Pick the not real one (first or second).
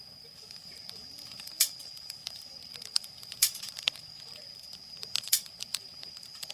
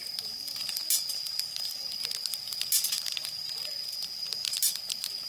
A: first